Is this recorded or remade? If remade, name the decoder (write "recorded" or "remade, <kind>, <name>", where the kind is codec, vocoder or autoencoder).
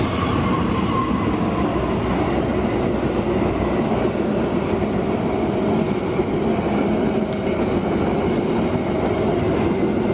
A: recorded